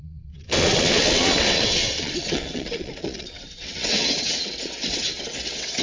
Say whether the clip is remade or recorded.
remade